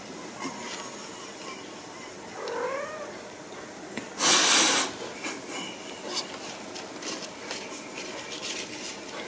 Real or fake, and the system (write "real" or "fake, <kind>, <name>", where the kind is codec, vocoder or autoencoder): real